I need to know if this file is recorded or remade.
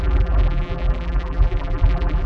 remade